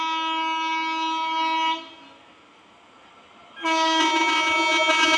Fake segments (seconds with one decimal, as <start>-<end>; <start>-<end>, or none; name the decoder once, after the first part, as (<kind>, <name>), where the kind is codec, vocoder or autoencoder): 4.0-5.2 (vocoder, Vocos)